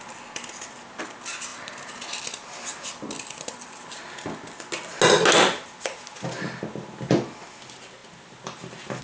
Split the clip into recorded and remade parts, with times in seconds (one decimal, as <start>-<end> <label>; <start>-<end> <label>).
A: 0.0-9.0 recorded